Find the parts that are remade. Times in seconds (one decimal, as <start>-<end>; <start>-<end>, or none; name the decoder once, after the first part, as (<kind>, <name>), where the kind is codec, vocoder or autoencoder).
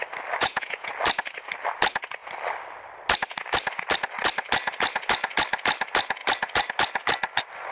0.4-0.9 (vocoder, Vocos)